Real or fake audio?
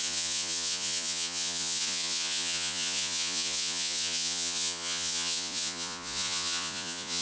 fake